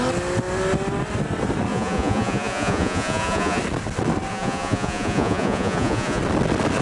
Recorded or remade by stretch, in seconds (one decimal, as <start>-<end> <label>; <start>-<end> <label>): 0.0-1.7 recorded; 1.7-3.6 remade; 3.6-4.3 recorded; 4.3-6.2 remade; 6.2-6.8 recorded